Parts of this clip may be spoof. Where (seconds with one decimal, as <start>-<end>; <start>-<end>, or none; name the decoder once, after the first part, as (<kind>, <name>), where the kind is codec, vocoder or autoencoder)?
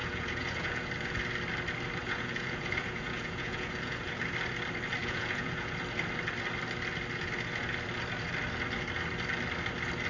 0.0-0.9 (vocoder, Vocos); 2.0-4.2; 5.0-5.8